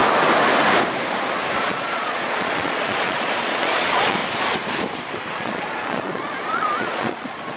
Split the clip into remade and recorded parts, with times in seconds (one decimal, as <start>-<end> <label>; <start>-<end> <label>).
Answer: 0.0-1.6 recorded; 1.6-4.2 remade; 4.2-5.3 recorded; 5.3-7.6 remade

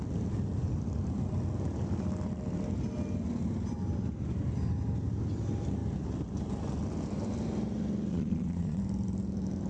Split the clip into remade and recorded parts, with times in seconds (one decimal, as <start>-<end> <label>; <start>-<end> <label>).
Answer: 0.0-8.1 recorded; 8.1-8.8 remade; 8.8-9.7 recorded

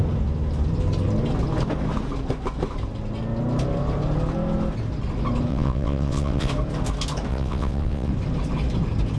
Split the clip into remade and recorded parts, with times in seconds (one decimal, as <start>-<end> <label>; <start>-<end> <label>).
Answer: 0.0-5.5 recorded; 5.5-6.5 remade; 6.5-7.3 recorded; 7.3-8.1 remade; 8.1-9.2 recorded

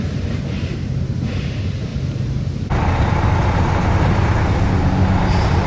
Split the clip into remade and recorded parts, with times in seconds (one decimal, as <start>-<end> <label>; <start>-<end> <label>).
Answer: 0.0-1.9 remade; 1.9-5.2 recorded; 5.2-5.7 remade

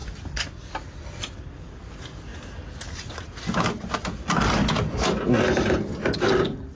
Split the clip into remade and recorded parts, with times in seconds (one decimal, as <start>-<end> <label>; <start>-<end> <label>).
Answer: 0.0-6.8 recorded

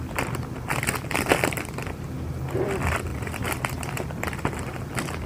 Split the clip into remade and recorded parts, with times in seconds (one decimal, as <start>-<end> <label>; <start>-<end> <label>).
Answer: 0.0-3.1 recorded; 3.1-3.6 remade; 3.6-5.3 recorded

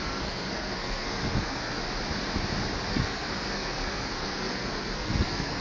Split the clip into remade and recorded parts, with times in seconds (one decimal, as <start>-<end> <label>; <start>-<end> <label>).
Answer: 0.0-1.8 remade; 1.8-2.9 recorded; 2.9-5.6 remade

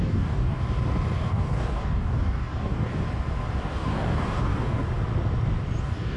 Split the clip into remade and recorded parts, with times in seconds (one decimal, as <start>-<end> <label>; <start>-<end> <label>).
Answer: 0.0-0.6 remade; 0.6-1.3 recorded; 1.3-3.0 remade; 3.0-3.6 recorded; 3.6-4.8 remade; 4.8-5.8 recorded; 5.8-6.2 remade